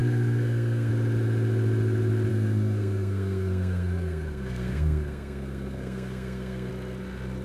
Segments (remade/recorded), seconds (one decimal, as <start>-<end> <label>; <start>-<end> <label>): 0.0-0.9 remade; 0.9-2.3 recorded; 2.3-6.7 remade; 6.7-7.4 recorded